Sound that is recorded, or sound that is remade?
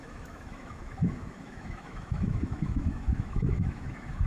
remade